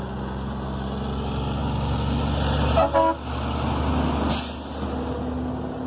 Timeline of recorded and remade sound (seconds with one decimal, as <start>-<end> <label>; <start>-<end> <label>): 0.0-5.9 recorded